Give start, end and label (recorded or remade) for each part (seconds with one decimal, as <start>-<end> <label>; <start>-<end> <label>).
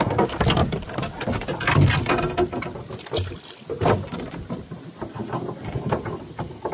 0.0-6.7 recorded